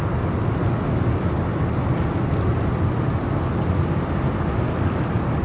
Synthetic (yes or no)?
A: no